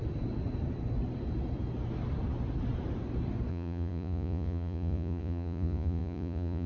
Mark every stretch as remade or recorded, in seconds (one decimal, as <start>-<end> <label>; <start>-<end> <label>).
0.0-3.5 recorded; 3.5-6.7 remade